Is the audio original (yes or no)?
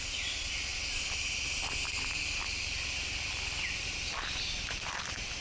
yes